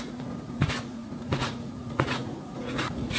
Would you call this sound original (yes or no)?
no